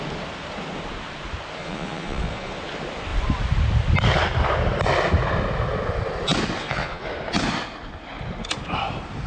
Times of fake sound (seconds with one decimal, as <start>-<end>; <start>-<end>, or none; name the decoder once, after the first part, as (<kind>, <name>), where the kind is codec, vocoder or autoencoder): 1.6-2.6 (vocoder, Vocos); 6.6-7.1